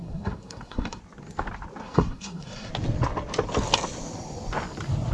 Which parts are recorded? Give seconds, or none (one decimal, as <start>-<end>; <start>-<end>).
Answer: 1.0-1.8; 2.7-5.1